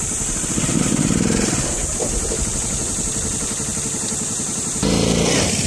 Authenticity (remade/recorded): recorded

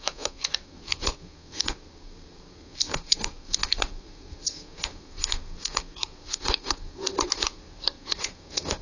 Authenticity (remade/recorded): remade